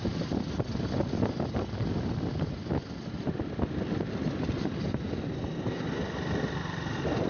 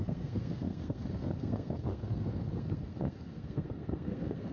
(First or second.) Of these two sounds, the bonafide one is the first